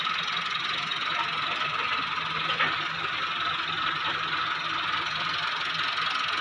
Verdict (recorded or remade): recorded